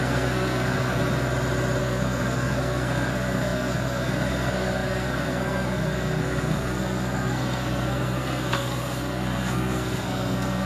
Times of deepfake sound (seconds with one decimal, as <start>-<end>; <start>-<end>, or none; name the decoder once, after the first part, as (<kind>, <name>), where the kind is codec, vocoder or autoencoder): 0.0-1.0 (codec, SNAC); 1.8-10.7

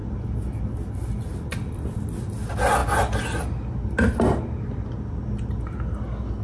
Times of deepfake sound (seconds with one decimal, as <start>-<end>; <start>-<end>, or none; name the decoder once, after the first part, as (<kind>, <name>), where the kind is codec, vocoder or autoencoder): none

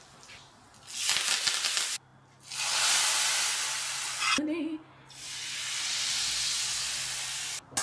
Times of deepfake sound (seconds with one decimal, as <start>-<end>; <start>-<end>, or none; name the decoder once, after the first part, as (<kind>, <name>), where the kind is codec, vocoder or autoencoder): none

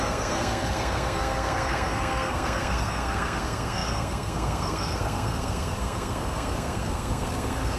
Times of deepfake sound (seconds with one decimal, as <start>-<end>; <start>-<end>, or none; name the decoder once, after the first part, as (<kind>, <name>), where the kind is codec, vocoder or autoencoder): 0.0-7.8 (codec, SNAC)

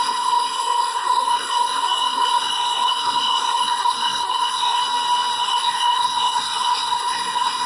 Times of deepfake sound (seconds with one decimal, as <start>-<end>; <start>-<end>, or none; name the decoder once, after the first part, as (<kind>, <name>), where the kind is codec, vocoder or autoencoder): 0.0-4.8 (codec, SNAC); 5.4-7.7

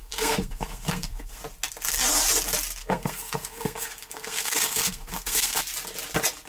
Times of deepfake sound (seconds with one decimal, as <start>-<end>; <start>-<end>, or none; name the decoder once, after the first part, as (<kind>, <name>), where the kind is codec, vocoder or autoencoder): 0.0-1.4 (codec, SNAC); 2.8-5.6